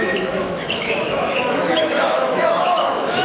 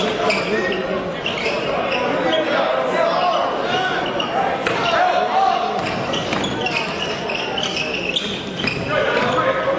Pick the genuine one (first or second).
second